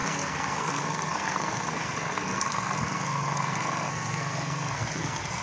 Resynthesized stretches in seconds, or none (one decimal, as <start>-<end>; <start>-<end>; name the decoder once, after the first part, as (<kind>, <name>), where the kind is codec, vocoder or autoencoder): 0.0-5.4 (codec, SNAC)